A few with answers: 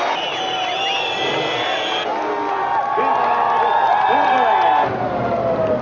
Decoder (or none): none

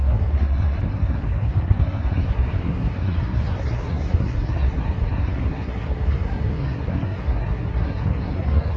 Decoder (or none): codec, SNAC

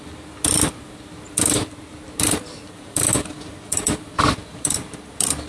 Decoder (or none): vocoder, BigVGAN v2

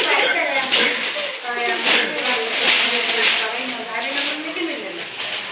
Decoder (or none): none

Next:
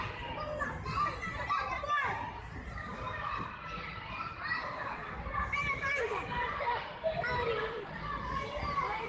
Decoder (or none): none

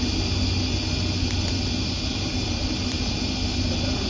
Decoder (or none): none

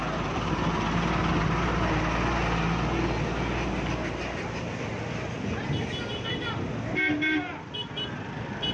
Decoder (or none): none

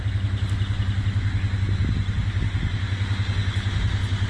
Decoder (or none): none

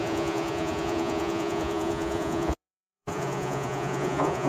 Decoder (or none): vocoder, Vocos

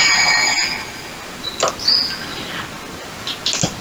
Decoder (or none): none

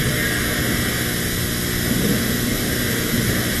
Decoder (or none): none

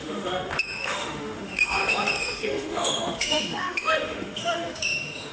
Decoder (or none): autoencoder, DAC-VAE